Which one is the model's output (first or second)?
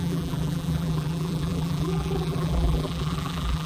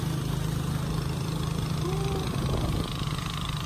first